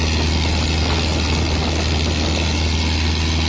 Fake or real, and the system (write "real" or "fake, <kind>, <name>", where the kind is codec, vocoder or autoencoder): real